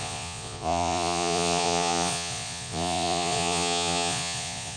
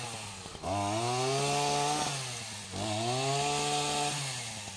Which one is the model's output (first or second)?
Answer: first